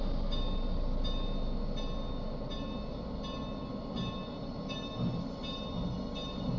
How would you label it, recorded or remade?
recorded